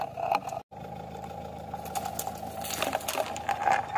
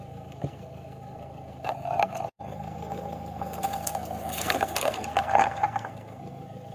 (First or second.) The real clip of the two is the first